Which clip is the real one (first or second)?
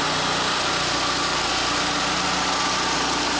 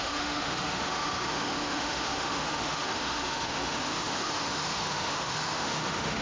first